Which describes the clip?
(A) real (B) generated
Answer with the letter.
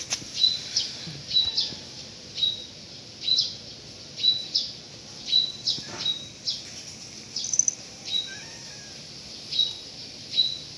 A